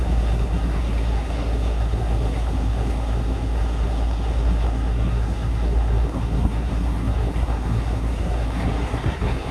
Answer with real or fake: fake